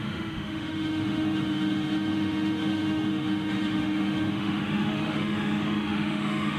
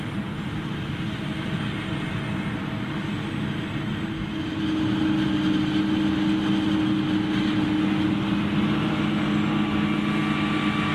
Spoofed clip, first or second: first